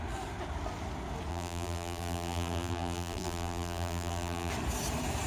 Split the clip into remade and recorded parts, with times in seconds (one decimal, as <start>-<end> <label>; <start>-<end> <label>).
0.0-1.3 recorded; 1.3-4.5 remade; 4.5-5.3 recorded